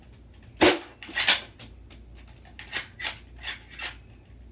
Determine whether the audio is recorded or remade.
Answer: recorded